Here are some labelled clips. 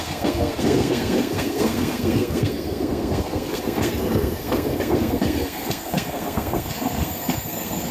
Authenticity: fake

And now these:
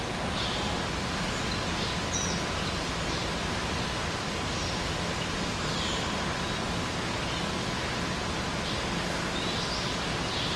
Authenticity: real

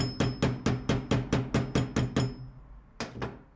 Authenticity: real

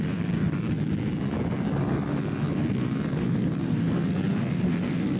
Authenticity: real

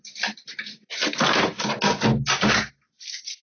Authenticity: real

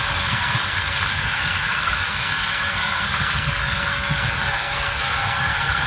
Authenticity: fake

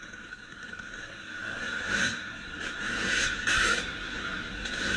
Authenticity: fake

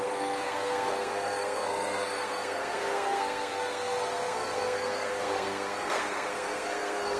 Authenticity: fake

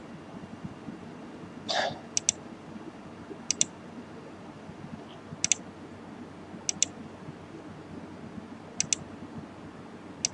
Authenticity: real